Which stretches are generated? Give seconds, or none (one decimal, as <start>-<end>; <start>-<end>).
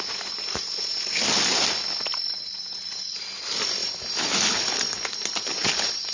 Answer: 2.1-3.0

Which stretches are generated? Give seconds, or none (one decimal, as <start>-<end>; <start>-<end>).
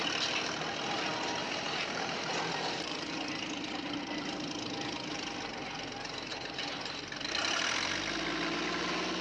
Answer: 1.4-4.0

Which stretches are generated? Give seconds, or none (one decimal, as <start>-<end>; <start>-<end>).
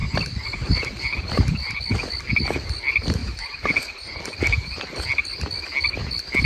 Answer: 3.2-4.2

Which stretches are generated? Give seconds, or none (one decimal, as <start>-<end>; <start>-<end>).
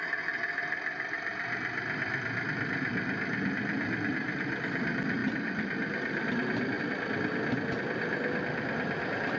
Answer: none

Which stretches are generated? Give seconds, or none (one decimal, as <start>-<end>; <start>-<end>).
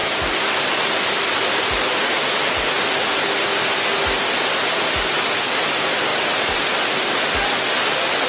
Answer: 6.1-7.3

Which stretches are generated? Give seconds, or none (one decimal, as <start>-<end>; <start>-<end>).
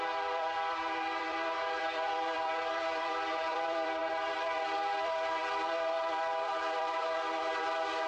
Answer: 0.0-8.1